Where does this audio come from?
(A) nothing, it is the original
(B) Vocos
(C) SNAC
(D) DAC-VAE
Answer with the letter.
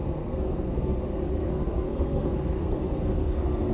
C